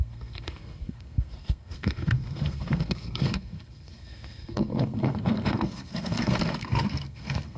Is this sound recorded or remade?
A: remade